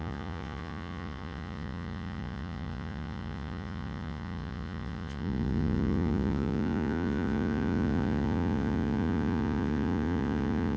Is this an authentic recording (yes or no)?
no